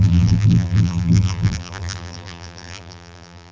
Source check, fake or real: fake